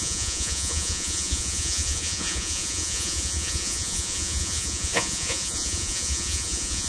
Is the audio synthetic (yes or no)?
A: yes